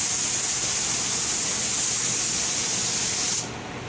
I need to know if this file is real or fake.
real